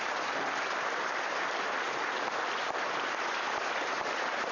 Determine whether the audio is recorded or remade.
recorded